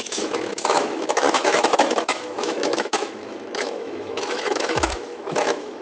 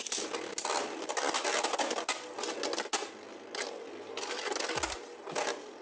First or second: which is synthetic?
first